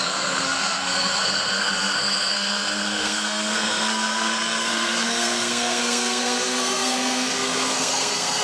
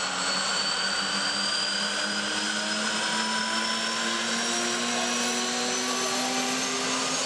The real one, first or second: second